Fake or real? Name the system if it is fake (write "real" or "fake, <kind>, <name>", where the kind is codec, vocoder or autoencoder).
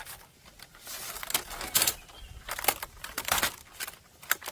real